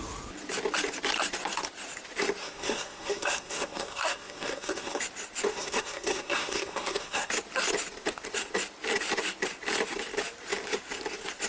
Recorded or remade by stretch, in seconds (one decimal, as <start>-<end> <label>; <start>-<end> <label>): 0.0-2.4 recorded; 2.4-5.0 remade; 5.0-5.5 recorded; 5.5-7.3 remade; 7.3-11.5 recorded